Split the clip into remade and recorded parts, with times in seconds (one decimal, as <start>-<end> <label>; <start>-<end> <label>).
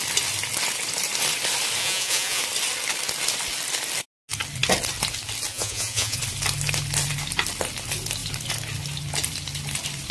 0.0-1.8 recorded; 1.8-2.4 remade; 2.4-5.5 recorded; 5.5-6.2 remade; 6.2-10.1 recorded